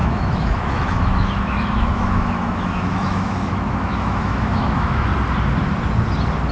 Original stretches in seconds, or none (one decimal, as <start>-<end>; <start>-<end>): 5.1-6.5